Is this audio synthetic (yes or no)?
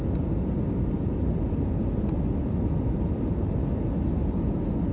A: no